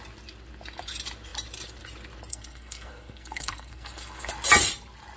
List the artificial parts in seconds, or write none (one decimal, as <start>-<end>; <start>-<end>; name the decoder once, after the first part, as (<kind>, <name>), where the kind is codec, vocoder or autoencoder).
2.3-4.3 (codec, SNAC)